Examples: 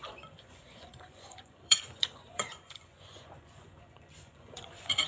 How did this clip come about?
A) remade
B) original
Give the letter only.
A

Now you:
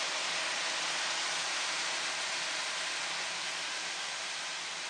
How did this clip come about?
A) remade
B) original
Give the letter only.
B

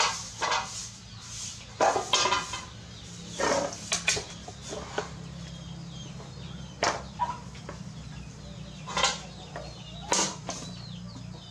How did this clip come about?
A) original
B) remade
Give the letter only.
A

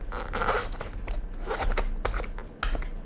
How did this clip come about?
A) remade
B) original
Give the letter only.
B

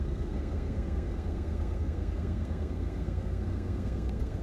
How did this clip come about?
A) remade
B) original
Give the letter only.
A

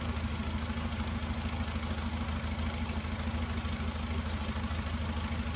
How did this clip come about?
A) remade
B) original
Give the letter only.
B